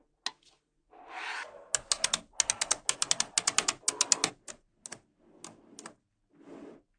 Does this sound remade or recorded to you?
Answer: recorded